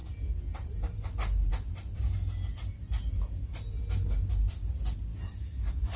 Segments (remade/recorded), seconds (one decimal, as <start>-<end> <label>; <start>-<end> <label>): 0.0-6.0 recorded